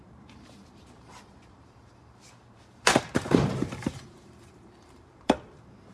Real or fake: fake